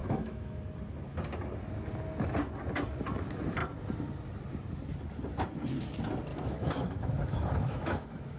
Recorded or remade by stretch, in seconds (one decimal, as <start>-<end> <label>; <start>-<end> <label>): 0.0-0.6 remade; 0.6-6.3 recorded; 6.3-8.4 remade